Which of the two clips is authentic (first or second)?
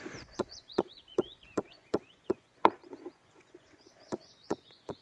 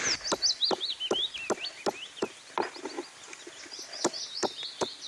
second